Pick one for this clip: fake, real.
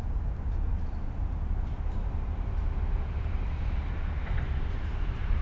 fake